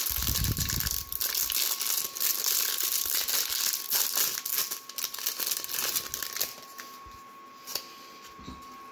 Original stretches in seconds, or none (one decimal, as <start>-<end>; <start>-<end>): 0.0-8.9